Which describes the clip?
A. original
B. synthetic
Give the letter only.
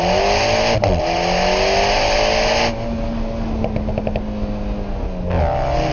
A